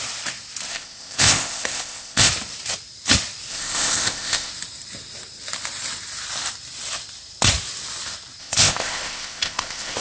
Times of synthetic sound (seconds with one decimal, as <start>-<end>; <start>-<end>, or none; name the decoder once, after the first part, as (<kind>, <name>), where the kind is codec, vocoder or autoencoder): 0.7-2.3 (codec, ZipCodec); 3.5-4.5; 8.4-10.0